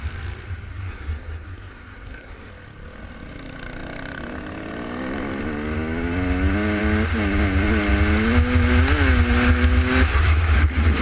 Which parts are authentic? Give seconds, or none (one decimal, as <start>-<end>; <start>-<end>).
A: 0.0-0.7; 2.5-10.1